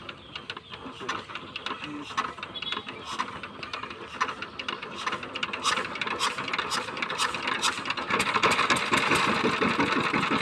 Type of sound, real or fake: real